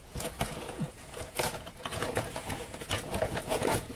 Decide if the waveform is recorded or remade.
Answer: remade